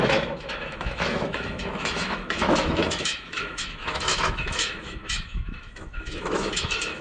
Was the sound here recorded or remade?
remade